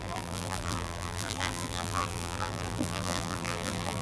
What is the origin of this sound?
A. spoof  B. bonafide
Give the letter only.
A